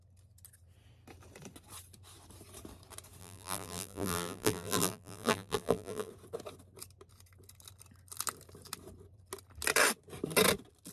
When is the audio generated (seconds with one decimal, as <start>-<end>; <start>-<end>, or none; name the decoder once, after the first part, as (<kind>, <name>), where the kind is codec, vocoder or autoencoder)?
3.2-6.1 (vocoder, BigVGAN v2)